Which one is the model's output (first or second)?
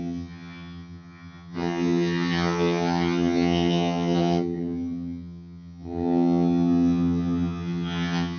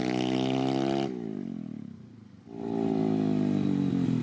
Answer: first